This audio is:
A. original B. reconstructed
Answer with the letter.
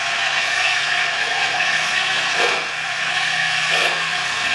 B